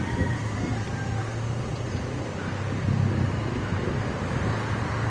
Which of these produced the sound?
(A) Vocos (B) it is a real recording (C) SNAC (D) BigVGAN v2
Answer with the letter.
B